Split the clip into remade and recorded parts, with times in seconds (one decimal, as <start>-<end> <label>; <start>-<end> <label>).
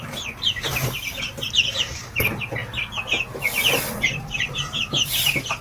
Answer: 0.0-1.1 recorded; 1.1-1.8 remade; 1.8-5.6 recorded